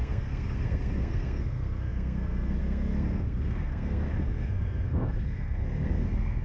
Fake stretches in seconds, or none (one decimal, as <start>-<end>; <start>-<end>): 0.0-6.4